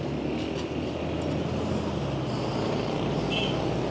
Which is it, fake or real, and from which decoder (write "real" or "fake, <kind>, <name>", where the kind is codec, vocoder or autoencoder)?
real